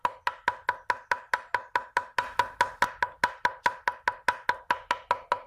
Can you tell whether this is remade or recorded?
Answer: recorded